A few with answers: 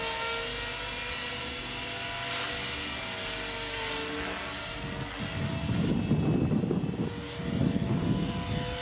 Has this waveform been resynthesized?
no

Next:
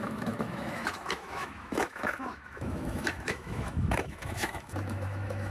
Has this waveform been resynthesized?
yes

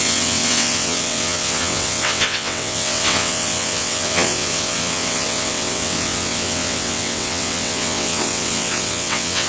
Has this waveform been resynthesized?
yes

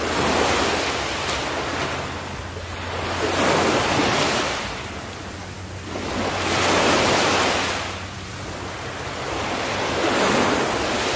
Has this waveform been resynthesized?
no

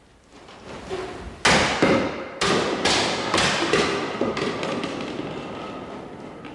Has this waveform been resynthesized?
no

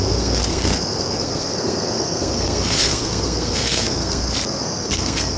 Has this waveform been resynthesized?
yes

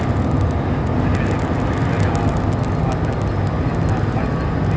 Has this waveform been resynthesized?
no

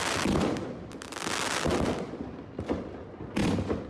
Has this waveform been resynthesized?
no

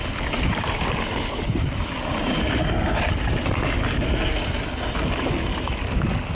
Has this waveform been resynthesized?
no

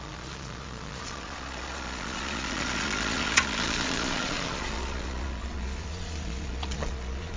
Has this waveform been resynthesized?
yes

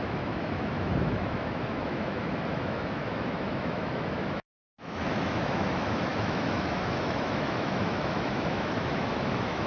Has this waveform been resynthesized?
yes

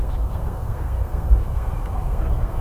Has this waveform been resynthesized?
yes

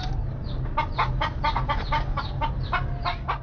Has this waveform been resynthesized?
no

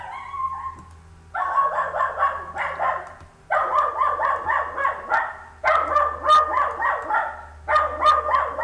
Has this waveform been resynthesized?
no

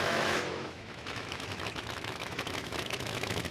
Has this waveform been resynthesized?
yes